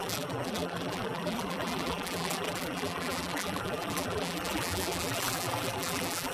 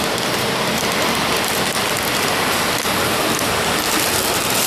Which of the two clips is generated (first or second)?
first